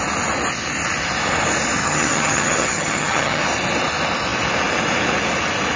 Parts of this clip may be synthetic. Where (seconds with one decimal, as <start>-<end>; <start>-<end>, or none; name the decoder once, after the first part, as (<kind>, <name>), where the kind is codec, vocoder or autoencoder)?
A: 1.8-3.4 (vocoder, HiFi-GAN)